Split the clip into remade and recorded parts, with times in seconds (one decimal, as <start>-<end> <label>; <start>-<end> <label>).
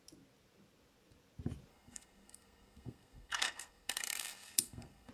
0.0-1.7 recorded; 1.7-5.1 remade